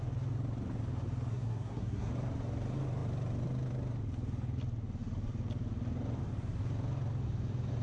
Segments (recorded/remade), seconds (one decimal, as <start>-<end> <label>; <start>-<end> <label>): 0.0-1.3 recorded; 1.3-2.1 remade; 2.1-7.8 recorded